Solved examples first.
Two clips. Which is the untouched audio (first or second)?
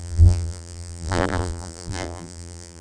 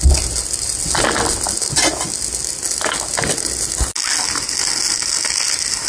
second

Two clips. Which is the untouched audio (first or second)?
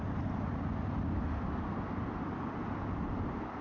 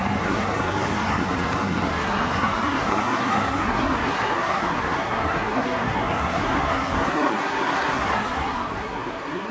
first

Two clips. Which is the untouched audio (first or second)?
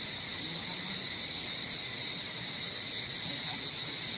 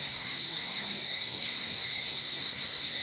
first